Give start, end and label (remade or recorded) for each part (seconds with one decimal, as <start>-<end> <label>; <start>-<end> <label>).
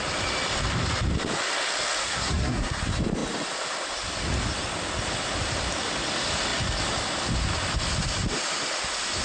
0.0-2.0 recorded; 2.0-2.8 remade; 2.8-9.2 recorded